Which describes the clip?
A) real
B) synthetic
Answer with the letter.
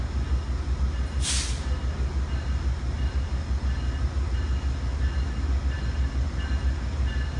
A